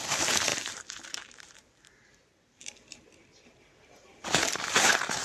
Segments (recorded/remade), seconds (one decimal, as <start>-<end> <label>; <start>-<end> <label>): 0.0-0.5 recorded; 0.5-3.6 remade; 3.6-4.1 recorded; 4.1-5.2 remade